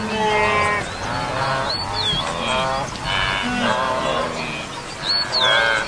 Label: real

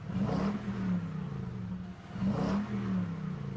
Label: real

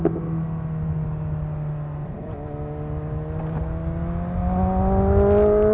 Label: real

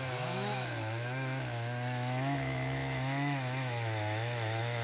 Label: fake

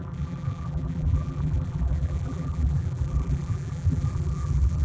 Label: fake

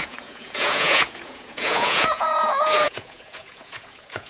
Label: fake